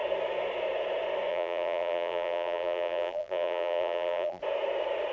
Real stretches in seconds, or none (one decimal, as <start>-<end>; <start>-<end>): 0.0-1.3; 4.4-5.1